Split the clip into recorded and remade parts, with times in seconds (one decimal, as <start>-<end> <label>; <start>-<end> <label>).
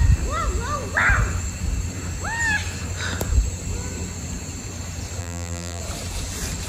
0.0-5.2 recorded; 5.2-5.8 remade; 5.8-6.7 recorded